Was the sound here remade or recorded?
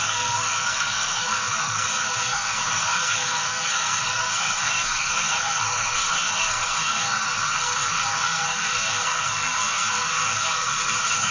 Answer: remade